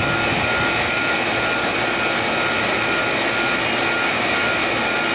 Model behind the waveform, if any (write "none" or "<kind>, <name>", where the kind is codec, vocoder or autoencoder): none